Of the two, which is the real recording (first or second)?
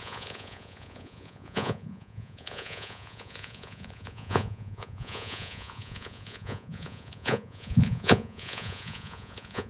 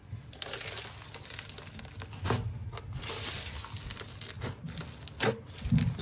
second